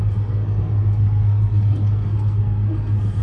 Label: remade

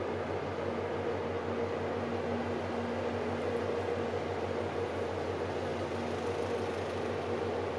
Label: recorded